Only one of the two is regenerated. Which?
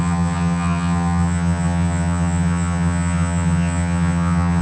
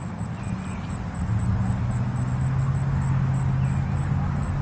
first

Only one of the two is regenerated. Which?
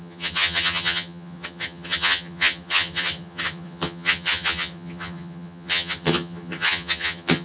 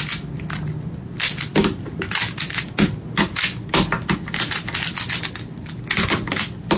first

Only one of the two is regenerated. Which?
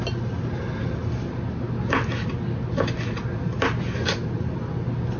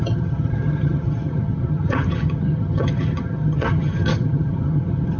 second